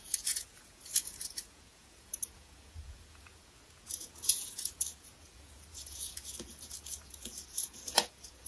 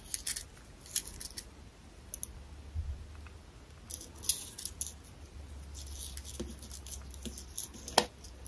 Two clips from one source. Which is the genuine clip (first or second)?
second